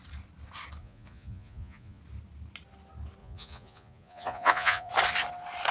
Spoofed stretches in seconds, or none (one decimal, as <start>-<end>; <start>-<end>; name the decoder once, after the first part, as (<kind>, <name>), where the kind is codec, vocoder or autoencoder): 0.8-2.0 (vocoder, Vocos); 3.2-4.9